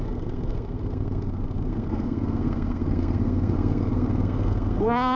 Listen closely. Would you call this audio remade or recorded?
remade